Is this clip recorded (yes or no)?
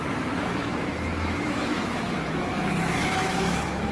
no